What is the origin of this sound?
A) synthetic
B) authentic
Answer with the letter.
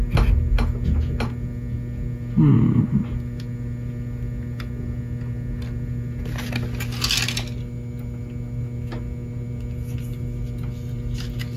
B